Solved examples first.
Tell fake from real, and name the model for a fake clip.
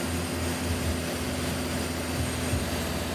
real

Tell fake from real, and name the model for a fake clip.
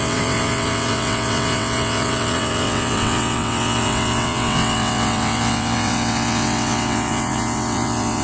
fake, vocoder, WaveNeXt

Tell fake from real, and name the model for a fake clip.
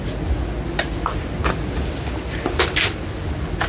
real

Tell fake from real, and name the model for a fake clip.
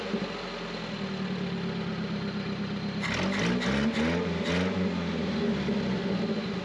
real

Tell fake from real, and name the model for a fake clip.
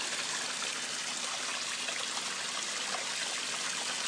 real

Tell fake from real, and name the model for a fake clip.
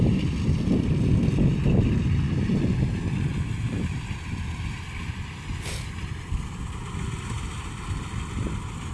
real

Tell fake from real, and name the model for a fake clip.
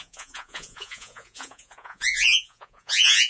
fake, vocoder, Vocos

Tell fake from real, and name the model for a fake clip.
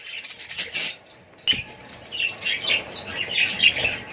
real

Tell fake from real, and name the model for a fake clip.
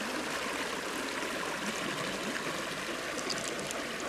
real